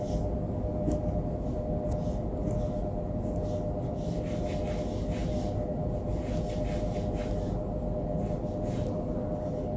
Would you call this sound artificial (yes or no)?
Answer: no